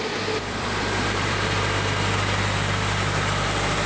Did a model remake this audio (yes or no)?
yes